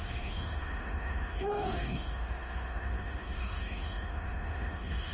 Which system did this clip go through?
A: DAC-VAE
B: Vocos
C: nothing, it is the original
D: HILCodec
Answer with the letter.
A